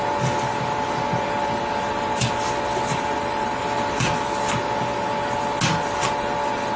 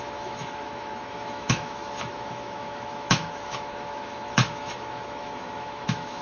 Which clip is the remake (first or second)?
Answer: second